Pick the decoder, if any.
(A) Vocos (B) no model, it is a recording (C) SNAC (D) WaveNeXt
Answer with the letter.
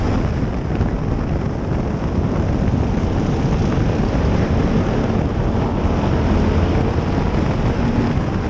B